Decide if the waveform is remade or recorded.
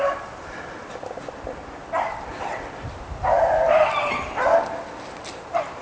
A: recorded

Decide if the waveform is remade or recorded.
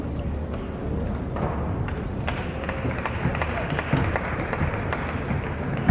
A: recorded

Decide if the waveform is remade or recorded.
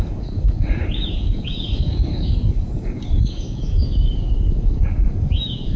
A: remade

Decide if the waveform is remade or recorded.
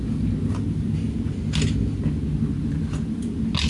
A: recorded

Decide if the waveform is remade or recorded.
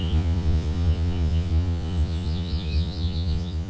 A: remade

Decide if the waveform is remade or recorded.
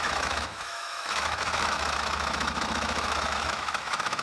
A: remade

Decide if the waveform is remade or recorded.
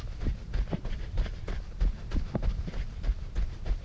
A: recorded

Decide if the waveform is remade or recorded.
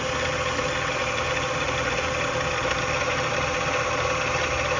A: recorded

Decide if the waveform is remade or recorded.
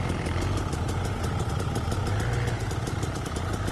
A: recorded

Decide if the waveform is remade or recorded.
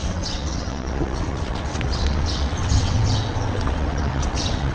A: remade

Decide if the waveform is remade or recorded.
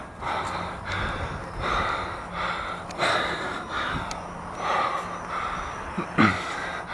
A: recorded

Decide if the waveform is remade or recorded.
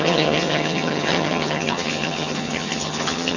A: remade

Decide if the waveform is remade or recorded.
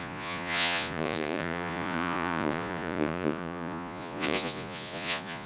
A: remade